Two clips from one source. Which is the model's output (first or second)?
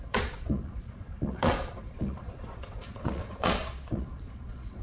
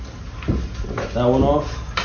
first